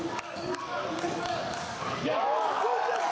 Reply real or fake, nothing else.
fake